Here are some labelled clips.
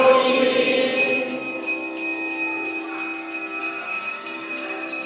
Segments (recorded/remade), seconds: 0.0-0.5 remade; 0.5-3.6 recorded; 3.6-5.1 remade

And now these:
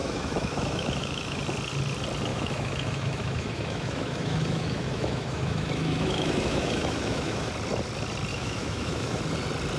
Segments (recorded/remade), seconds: 0.0-1.4 remade; 1.4-2.3 recorded; 2.3-7.5 remade; 7.5-8.3 recorded; 8.3-9.2 remade; 9.2-9.8 recorded

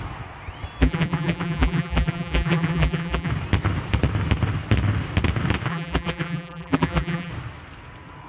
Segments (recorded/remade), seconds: 0.0-0.8 recorded; 0.8-3.3 remade; 3.3-5.7 recorded; 5.7-7.3 remade; 7.3-8.3 recorded

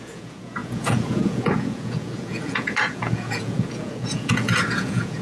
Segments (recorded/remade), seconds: 0.0-5.2 remade

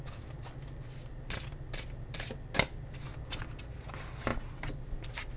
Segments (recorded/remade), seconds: 0.0-5.4 recorded